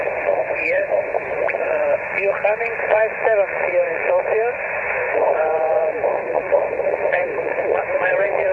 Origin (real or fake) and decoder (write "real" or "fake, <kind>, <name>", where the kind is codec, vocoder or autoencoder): fake, vocoder, Vocos